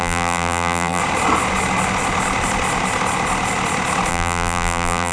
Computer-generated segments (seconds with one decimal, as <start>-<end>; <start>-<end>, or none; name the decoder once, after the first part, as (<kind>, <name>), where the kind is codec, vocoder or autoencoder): 0.0-1.0 (vocoder, BigVGAN v2); 4.1-5.1